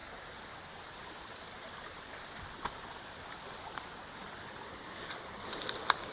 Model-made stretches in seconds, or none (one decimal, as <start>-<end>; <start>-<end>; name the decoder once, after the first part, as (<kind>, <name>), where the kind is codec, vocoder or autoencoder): 1.7-6.1 (vocoder, BigVGAN v2)